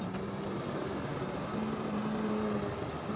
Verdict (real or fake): real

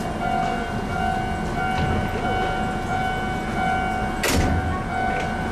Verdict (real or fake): real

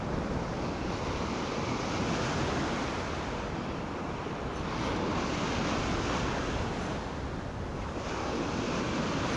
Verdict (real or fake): real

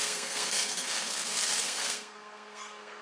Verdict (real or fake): fake